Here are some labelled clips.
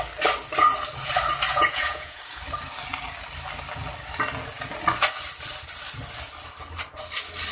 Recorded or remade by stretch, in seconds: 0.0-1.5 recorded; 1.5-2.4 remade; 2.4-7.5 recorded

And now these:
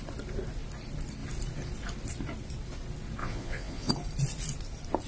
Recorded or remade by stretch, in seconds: 0.0-3.2 recorded; 3.2-3.9 remade; 3.9-5.1 recorded

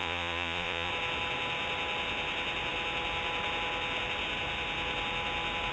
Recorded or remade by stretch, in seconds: 0.0-0.9 remade; 0.9-5.7 recorded

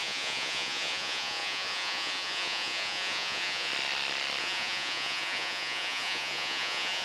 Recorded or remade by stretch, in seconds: 0.0-3.7 remade; 3.7-4.4 recorded; 4.4-7.0 remade

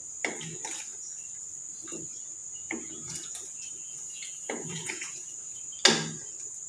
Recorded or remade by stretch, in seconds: 0.0-2.4 recorded; 2.4-5.6 remade; 5.6-6.7 recorded

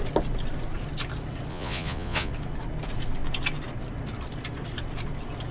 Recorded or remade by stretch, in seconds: 0.0-1.5 recorded; 1.5-2.3 remade; 2.3-5.5 recorded